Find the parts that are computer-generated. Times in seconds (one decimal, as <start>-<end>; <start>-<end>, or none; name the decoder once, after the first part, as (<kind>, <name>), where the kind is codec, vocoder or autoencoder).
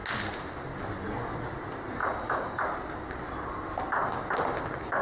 2.0-2.6 (codec, DAC)